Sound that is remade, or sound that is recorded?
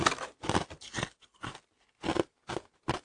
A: recorded